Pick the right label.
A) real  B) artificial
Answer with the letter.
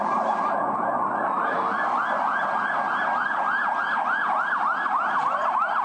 A